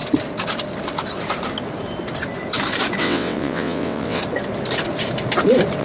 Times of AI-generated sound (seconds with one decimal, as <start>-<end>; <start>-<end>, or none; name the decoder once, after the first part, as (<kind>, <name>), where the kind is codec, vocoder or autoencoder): 3.0-4.2 (vocoder, WaveNeXt)